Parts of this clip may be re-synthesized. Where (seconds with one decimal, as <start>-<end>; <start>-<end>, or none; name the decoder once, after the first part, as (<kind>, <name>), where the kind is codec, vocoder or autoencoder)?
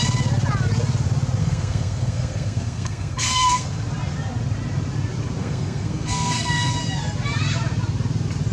1.4-3.8 (codec, SNAC); 5.4-6.7